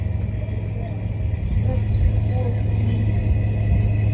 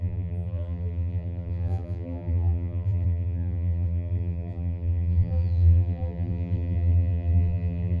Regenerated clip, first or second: second